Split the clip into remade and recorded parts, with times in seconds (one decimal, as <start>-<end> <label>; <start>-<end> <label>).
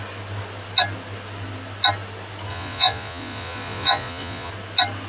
0.0-2.5 recorded; 2.5-4.5 remade; 4.5-5.1 recorded